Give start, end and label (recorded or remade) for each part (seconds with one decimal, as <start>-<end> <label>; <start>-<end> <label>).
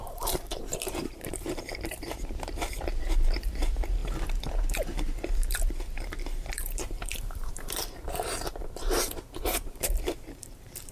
0.0-10.9 remade